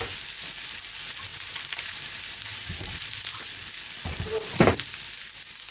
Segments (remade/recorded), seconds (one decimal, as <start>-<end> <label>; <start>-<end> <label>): 0.0-1.3 recorded; 1.3-2.1 remade; 2.1-2.5 recorded; 2.5-3.4 remade; 3.4-5.7 recorded